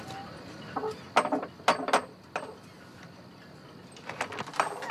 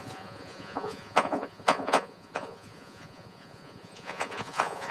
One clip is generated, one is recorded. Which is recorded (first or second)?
first